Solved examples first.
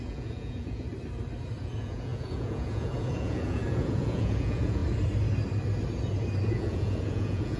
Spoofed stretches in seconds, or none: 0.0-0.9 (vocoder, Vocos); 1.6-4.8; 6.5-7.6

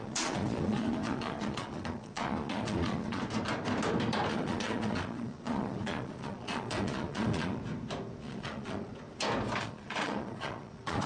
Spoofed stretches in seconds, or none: 0.0-3.2 (vocoder, Vocos); 4.3-7.6; 8.2-8.9; 9.6-11.1

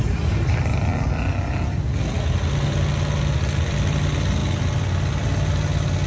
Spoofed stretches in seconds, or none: none

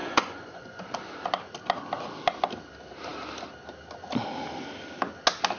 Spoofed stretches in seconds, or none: 0.0-0.8 (vocoder, Vocos)